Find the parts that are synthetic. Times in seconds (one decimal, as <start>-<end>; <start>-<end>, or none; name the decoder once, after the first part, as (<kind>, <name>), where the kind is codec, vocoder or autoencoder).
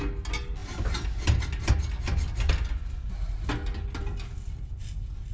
none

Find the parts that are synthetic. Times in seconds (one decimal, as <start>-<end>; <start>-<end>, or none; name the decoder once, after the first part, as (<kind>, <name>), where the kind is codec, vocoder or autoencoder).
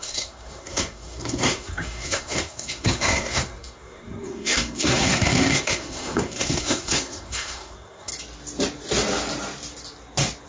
0.0-8.1 (codec, SNAC)